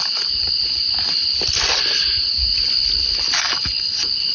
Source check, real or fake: real